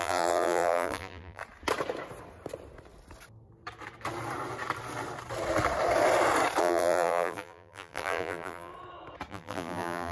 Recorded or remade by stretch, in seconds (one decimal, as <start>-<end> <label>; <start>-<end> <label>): 0.0-1.4 remade; 1.4-6.6 recorded; 6.6-8.7 remade; 8.7-9.3 recorded; 9.3-10.1 remade